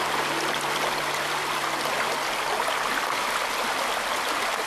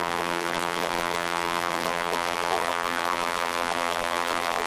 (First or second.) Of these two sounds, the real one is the first